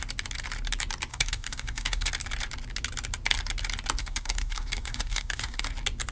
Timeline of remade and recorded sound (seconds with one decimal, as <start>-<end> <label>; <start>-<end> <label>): 0.0-1.1 recorded; 1.1-2.1 remade; 2.1-4.0 recorded; 4.0-5.6 remade; 5.6-6.1 recorded